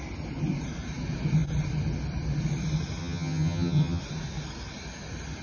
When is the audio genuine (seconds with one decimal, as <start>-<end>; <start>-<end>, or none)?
0.0-3.0; 4.0-5.4